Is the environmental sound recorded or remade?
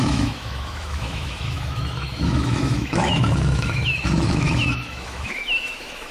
remade